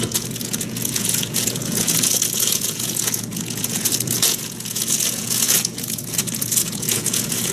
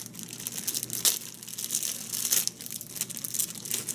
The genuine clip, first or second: second